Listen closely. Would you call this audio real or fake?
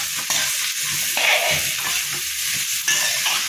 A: real